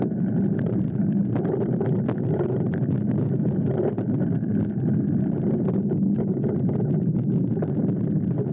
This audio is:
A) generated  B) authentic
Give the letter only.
B